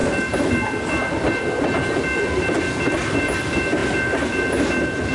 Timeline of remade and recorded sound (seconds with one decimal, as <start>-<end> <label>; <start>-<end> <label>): 0.0-5.1 recorded